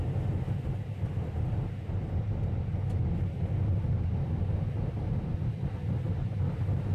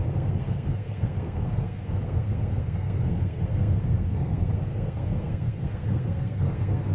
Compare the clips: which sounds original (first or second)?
first